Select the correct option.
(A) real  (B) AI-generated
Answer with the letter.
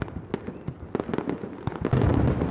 A